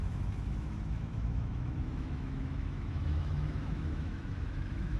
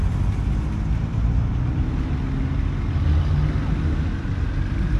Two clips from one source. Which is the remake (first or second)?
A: first